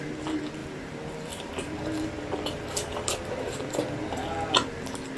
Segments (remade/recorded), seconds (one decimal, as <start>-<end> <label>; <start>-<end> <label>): 0.0-0.6 recorded; 0.6-3.7 remade; 3.7-5.2 recorded